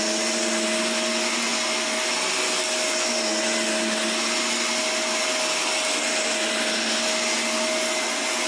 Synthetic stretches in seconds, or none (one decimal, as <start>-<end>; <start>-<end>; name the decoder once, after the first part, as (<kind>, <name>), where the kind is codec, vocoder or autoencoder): none